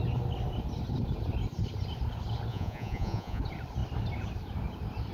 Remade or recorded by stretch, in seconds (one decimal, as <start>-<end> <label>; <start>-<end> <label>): 0.0-2.5 recorded; 2.5-3.4 remade; 3.4-5.1 recorded